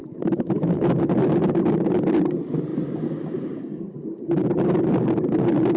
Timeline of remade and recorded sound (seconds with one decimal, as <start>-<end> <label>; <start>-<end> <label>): 0.0-1.0 remade; 1.0-5.8 recorded

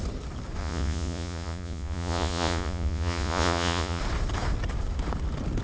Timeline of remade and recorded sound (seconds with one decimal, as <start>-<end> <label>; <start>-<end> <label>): 0.0-0.6 recorded; 0.6-4.0 remade; 4.0-5.6 recorded